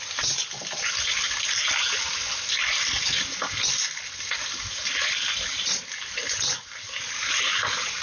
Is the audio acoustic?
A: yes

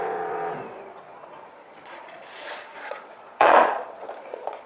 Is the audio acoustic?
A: no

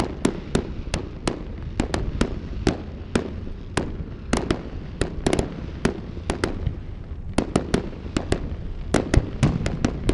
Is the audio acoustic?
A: yes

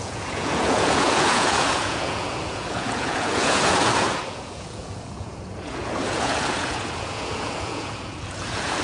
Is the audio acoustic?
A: no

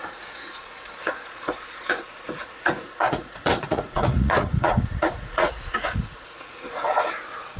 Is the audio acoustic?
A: no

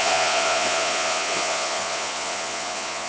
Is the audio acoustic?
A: no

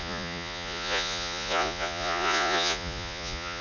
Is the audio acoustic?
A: no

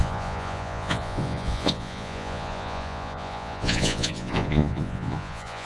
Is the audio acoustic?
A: no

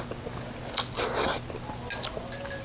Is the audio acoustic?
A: yes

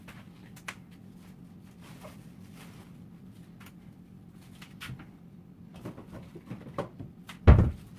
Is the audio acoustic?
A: yes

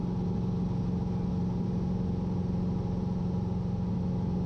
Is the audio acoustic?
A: yes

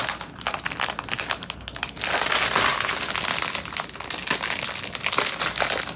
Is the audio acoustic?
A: yes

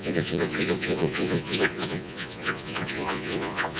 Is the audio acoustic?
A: no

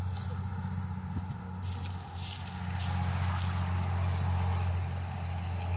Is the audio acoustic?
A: yes